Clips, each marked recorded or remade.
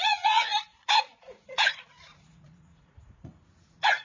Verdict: remade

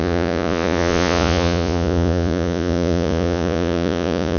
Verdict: remade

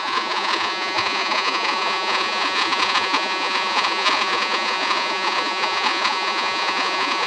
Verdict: remade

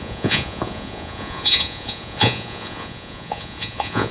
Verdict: remade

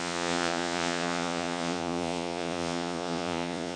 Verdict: remade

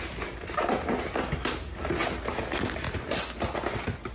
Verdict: recorded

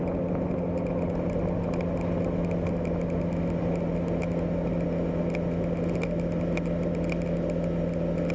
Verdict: recorded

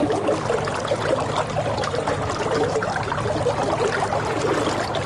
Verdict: recorded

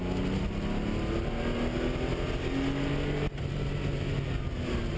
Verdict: recorded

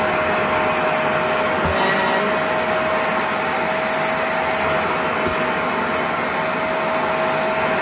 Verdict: recorded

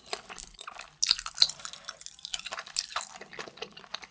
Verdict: recorded